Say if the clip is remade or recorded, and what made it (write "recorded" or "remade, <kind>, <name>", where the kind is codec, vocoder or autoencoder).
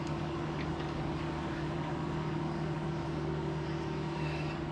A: remade, codec, DAC